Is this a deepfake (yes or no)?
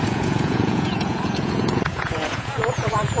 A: yes